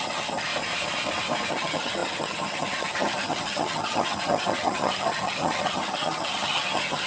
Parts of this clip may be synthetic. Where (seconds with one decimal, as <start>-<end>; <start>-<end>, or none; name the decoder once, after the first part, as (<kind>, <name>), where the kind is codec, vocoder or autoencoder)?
0.0-0.5 (vocoder, HiFi-GAN); 1.5-7.1